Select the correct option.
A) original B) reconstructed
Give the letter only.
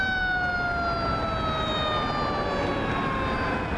A